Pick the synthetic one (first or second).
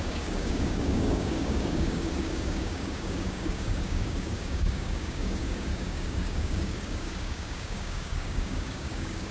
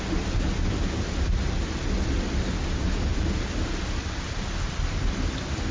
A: first